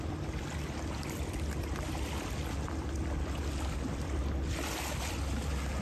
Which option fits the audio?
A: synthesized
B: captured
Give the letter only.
B